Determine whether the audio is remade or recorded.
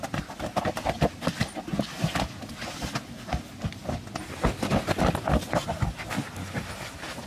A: recorded